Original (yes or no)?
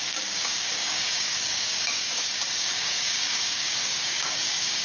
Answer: no